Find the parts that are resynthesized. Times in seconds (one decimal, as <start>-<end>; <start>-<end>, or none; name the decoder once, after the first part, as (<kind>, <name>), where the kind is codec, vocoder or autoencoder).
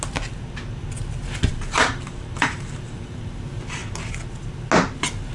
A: 1.5-3.4 (vocoder, BigVGAN v2)